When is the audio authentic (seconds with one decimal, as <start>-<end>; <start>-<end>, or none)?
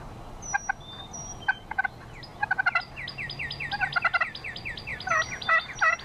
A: 0.0-6.0